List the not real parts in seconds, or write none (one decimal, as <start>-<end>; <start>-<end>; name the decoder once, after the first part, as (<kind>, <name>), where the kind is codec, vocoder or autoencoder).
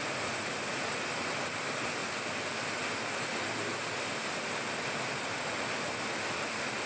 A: none